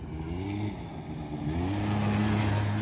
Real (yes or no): yes